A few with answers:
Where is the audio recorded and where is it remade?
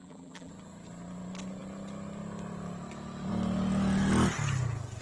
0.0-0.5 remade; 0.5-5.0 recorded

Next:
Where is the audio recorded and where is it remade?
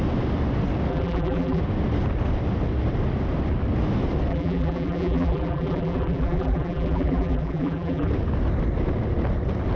0.0-0.9 recorded; 0.9-1.6 remade; 1.6-4.3 recorded; 4.3-8.1 remade; 8.1-9.8 recorded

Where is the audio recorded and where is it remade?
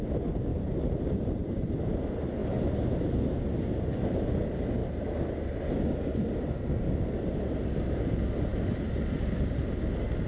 0.0-0.5 recorded; 0.5-1.7 remade; 1.7-10.3 recorded